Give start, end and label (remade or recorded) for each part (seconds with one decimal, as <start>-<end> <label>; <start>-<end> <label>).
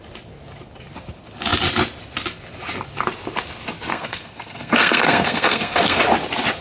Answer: 0.0-3.9 recorded; 3.9-6.0 remade; 6.0-6.6 recorded